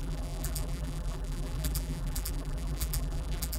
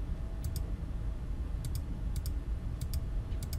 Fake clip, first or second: first